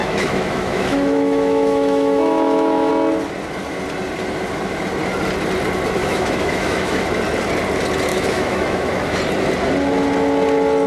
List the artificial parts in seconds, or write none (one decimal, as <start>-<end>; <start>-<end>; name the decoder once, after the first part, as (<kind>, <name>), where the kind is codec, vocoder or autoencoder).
0.0-2.9 (autoencoder, DAC-VAE); 6.0-7.0; 8.1-9.2